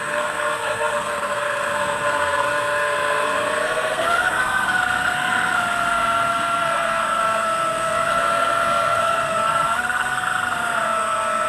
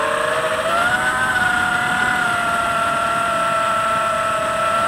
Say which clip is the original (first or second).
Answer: second